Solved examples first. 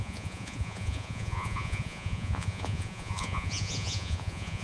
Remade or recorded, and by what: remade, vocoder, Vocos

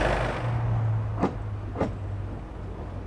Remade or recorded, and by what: recorded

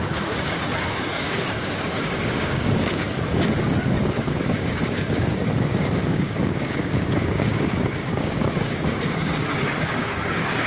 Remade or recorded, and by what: remade, codec, DAC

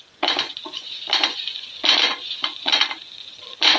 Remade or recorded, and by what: remade, vocoder, Vocos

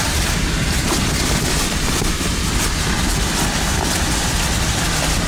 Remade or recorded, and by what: recorded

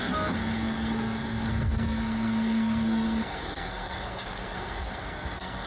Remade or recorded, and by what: remade, codec, SNAC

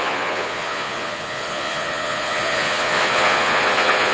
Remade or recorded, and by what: remade, vocoder, Vocos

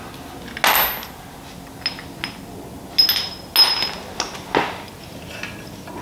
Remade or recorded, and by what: recorded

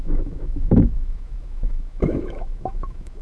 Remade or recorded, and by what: remade, autoencoder, DAC-VAE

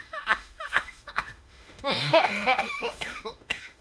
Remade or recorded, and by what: remade, autoencoder, DAC-VAE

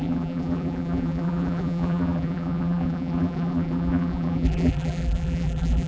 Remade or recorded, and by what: remade, vocoder, BigVGAN v2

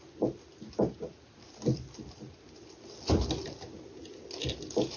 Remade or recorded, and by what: recorded